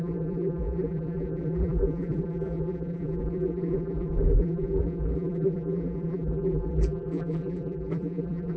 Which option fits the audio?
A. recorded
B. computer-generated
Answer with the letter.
B